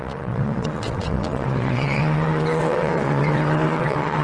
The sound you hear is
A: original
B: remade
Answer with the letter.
B